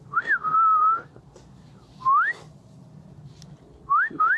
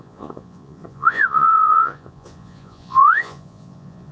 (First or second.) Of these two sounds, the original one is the first